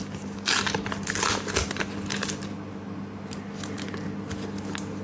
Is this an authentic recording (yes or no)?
yes